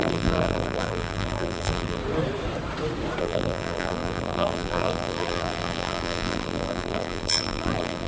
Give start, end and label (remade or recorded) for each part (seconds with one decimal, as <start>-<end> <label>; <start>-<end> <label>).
0.0-2.0 remade; 2.0-3.2 recorded; 3.2-8.1 remade